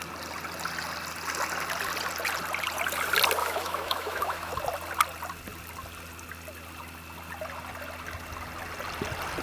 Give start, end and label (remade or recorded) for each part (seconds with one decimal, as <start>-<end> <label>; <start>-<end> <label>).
0.0-3.4 recorded; 3.4-4.5 remade; 4.5-9.4 recorded

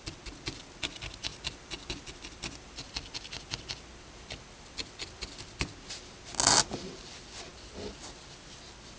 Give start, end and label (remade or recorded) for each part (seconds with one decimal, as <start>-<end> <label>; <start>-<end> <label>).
0.0-9.0 recorded

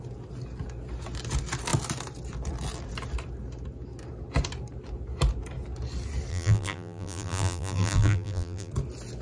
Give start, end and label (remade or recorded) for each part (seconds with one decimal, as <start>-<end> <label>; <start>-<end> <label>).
0.0-6.3 recorded; 6.3-8.7 remade; 8.7-9.2 recorded

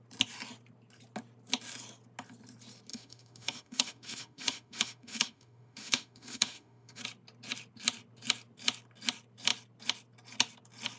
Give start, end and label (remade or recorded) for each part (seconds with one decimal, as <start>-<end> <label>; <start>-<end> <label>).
0.0-2.9 recorded; 2.9-7.0 remade; 7.0-11.0 recorded

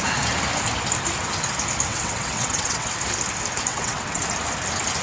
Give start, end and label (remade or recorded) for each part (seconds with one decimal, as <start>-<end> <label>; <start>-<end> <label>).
0.0-1.9 recorded; 1.9-2.9 remade; 2.9-3.7 recorded; 3.7-4.2 remade; 4.2-5.0 recorded

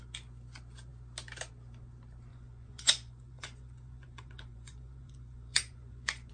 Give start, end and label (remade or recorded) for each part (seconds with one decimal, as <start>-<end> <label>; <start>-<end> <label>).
0.0-2.3 recorded; 2.3-6.3 remade